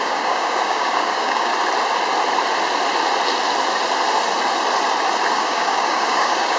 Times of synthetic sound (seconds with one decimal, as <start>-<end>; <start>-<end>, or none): 0.0-1.5; 5.3-6.6